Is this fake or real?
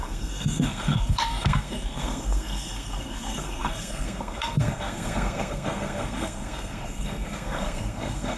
fake